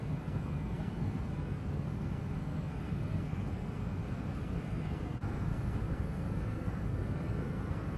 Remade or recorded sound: remade